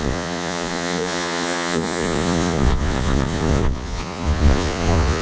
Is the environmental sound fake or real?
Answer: fake